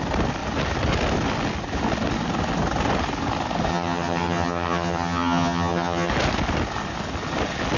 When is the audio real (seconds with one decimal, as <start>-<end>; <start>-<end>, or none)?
0.0-3.7; 6.1-7.8